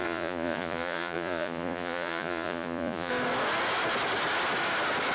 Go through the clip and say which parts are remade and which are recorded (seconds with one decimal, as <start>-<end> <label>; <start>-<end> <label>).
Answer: 0.0-3.1 remade; 3.1-5.1 recorded